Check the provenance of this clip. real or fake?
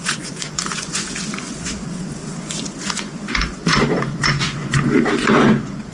fake